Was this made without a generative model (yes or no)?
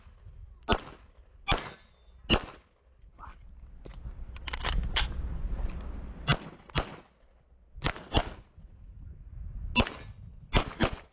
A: yes